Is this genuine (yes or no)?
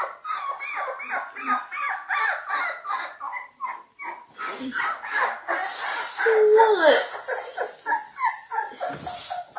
yes